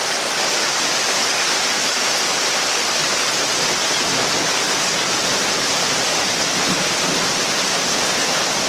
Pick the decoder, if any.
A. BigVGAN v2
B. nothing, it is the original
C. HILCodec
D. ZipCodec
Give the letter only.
A